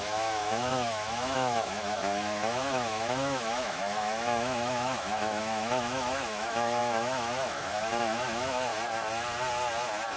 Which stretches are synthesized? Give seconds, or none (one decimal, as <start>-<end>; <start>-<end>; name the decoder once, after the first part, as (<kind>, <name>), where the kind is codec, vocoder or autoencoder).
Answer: 0.0-8.7 (autoencoder, DAC-VAE)